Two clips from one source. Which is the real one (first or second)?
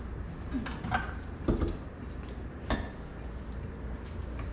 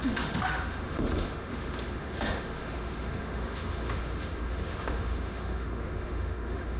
first